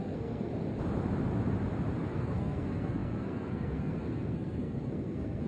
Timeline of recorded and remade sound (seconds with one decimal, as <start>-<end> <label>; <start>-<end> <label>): 0.0-0.5 remade; 0.5-2.1 recorded; 2.1-5.5 remade